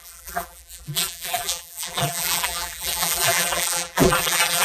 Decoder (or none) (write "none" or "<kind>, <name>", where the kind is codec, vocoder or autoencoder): vocoder, BigVGAN v2